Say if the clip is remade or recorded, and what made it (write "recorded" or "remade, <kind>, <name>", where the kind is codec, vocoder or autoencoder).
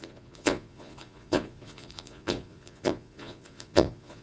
remade, vocoder, Vocos